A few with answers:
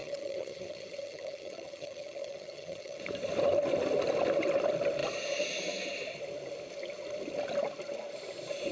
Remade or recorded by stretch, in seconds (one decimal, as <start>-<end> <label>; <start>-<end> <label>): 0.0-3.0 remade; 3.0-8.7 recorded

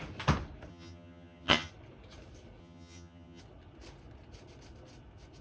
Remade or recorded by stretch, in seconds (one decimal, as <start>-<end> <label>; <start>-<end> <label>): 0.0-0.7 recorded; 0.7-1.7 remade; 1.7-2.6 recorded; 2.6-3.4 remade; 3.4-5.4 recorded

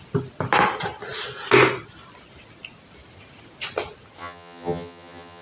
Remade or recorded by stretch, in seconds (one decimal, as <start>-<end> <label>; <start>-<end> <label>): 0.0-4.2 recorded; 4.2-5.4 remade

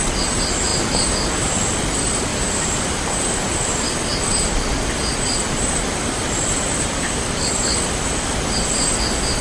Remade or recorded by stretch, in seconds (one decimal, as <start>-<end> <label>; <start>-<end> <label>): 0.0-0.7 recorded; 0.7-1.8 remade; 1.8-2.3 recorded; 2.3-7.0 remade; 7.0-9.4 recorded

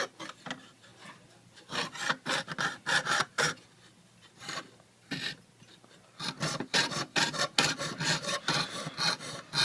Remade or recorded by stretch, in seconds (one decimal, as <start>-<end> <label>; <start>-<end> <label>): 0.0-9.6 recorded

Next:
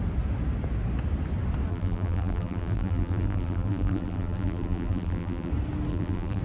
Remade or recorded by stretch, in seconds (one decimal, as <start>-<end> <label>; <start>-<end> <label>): 0.0-1.7 recorded; 1.7-5.5 remade; 5.5-5.9 recorded; 5.9-6.4 remade